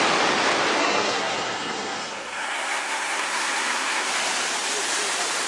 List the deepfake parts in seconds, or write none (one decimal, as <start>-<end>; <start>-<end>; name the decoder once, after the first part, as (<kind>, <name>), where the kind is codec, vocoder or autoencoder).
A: 0.8-4.1 (codec, SNAC)